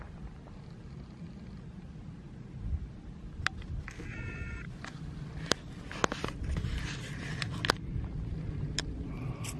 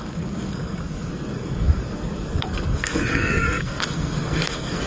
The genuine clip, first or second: first